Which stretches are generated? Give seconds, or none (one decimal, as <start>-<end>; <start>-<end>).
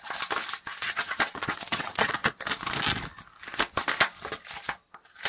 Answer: 0.7-2.3